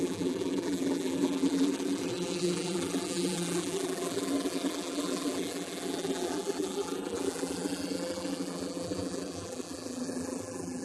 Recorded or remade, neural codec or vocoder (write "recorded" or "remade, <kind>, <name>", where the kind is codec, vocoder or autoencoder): remade, vocoder, BigVGAN v2